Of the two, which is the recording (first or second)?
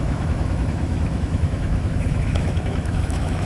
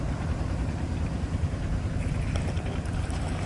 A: second